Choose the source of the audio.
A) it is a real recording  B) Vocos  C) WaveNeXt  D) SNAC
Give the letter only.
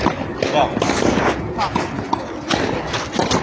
A